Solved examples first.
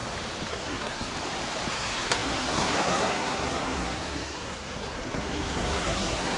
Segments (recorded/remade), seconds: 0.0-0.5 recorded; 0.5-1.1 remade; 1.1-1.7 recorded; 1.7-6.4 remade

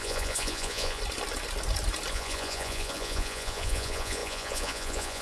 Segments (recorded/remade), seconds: 0.0-1.0 remade; 1.0-2.1 recorded; 2.1-5.2 remade

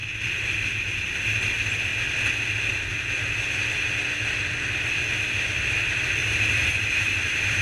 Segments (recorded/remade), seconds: 0.0-6.2 recorded; 6.2-7.6 remade

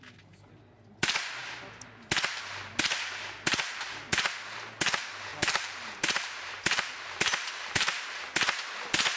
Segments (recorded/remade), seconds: 0.0-5.3 recorded; 5.3-8.2 remade; 8.2-9.2 recorded

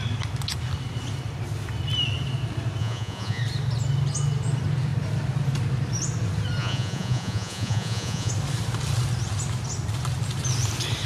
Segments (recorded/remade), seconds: 0.0-2.8 recorded; 2.8-3.4 remade; 3.4-6.6 recorded; 6.6-8.3 remade; 8.3-11.1 recorded

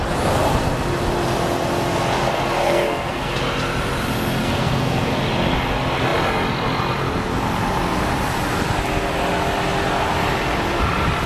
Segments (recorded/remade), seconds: 0.0-2.6 recorded; 2.6-3.4 remade; 3.4-4.4 recorded; 4.4-5.1 remade; 5.1-11.3 recorded

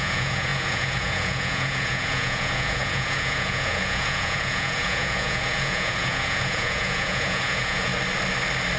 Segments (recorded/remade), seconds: 0.0-7.9 remade; 7.9-8.8 recorded